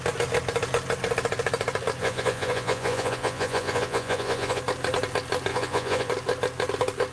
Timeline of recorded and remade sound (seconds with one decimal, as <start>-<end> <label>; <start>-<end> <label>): 0.0-2.0 recorded; 2.0-4.6 remade; 4.6-5.5 recorded; 5.5-6.1 remade; 6.1-7.1 recorded